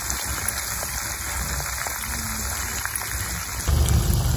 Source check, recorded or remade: recorded